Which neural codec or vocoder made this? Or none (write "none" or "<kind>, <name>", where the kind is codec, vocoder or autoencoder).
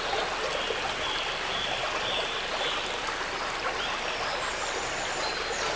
none